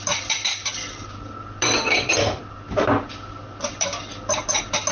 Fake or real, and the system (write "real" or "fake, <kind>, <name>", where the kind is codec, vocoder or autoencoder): real